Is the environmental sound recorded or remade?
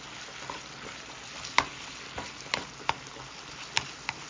recorded